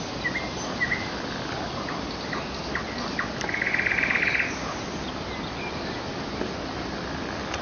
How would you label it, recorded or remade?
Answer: recorded